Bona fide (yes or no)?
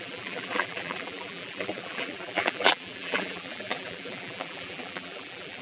no